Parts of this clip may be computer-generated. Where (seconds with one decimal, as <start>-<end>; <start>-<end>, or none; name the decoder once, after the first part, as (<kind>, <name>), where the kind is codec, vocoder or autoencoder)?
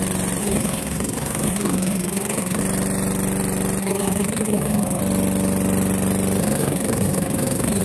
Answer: 0.4-2.6 (codec, SNAC); 3.8-5.0; 6.4-7.8